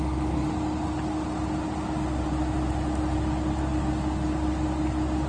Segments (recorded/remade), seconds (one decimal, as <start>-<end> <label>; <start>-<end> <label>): 0.0-5.3 recorded